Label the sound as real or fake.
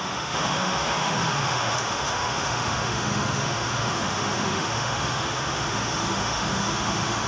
fake